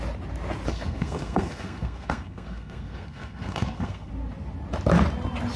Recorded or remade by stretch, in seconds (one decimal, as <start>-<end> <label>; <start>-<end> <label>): 0.0-0.7 recorded; 0.7-4.1 remade; 4.1-5.6 recorded